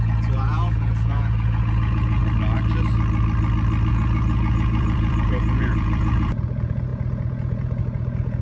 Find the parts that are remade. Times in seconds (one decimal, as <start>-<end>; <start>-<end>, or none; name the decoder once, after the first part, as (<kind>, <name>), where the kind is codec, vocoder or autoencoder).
0.0-2.2 (vocoder, Vocos); 3.9-8.4